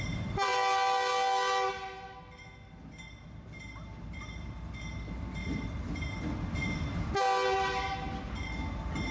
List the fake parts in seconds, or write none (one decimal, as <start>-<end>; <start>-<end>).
none